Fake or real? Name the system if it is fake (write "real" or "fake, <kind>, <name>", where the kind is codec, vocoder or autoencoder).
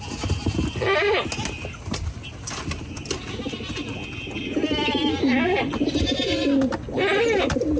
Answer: real